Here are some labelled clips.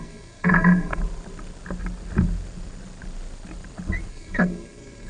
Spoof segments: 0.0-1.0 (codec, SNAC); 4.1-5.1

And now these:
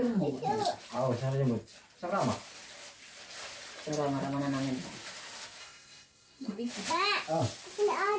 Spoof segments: 5.6-6.7 (codec, SNAC)